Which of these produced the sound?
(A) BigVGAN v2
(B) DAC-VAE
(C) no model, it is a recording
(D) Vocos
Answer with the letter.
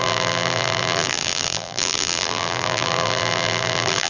A